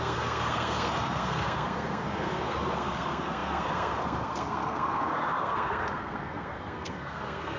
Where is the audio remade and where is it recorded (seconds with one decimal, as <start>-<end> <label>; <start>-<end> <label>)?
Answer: 0.0-7.6 remade